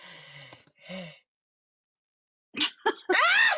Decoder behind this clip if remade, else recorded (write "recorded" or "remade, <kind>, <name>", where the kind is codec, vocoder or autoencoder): recorded